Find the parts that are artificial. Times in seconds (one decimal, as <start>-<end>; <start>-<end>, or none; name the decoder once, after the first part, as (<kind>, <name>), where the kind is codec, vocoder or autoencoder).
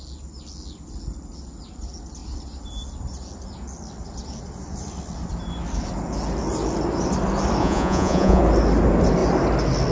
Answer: 7.6-8.4 (vocoder, Vocos)